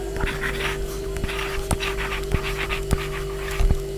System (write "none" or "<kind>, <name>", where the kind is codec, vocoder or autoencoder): none